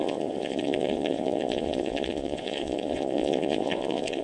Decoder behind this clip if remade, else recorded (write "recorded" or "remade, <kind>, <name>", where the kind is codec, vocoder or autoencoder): remade, vocoder, Vocos